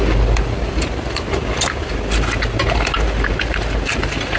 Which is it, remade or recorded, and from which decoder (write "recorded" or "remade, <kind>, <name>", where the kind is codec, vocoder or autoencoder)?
recorded